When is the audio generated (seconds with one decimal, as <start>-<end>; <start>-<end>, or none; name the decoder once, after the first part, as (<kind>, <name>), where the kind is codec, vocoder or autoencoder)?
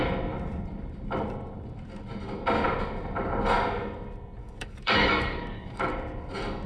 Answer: 4.4-5.9 (codec, DAC)